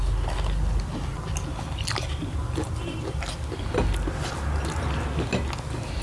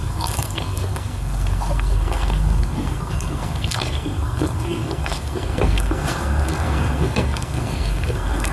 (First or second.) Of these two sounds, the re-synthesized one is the second